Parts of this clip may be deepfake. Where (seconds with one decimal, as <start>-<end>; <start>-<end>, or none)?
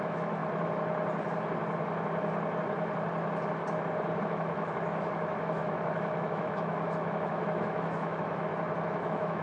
0.0-0.4; 4.2-8.5; 9.0-9.4